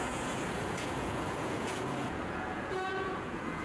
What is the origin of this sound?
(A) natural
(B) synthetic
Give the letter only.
B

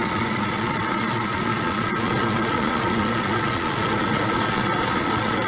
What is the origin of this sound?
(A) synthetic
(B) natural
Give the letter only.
A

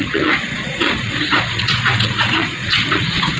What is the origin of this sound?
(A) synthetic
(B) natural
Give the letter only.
A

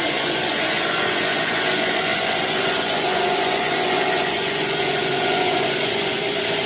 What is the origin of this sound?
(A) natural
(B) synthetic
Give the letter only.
B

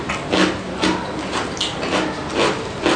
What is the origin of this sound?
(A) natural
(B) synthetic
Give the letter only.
A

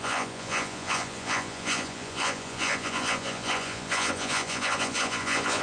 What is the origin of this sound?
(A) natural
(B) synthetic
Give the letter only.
B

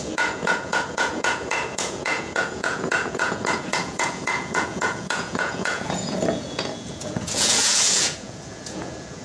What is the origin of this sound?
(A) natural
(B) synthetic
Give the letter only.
B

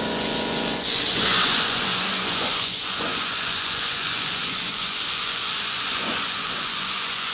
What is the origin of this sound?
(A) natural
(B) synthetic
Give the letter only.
B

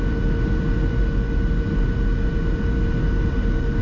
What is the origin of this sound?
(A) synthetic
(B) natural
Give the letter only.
B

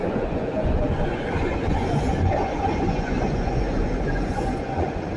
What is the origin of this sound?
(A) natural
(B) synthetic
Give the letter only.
B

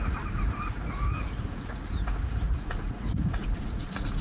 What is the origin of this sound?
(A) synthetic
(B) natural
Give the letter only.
A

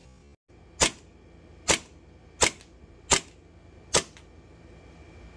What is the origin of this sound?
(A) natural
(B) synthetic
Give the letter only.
A